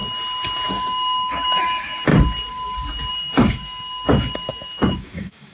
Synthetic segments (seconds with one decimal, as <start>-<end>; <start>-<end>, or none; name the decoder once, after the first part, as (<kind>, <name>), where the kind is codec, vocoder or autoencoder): 0.7-2.1 (autoencoder, DAC-VAE); 3.1-5.5